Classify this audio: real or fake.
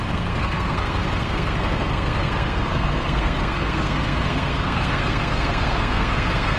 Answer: fake